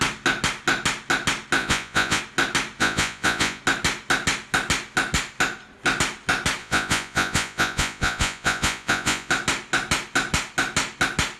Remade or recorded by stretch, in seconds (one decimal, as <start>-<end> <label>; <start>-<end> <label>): 0.0-1.6 recorded; 1.6-2.2 remade; 2.2-2.8 recorded; 2.8-3.6 remade; 3.6-6.6 recorded; 6.6-9.3 remade; 9.3-11.4 recorded